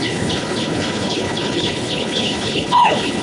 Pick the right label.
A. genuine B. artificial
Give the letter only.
B